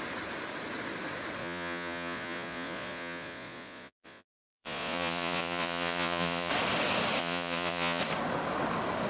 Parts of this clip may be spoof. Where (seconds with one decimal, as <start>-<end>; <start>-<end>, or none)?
1.4-6.5; 7.2-8.0